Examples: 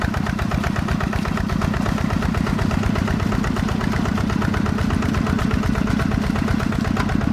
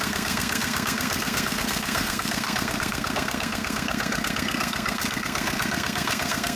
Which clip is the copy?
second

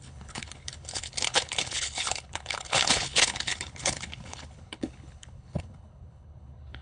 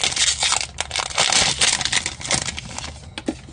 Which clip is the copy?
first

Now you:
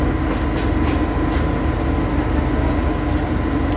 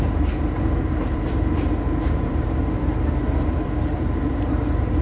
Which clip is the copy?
second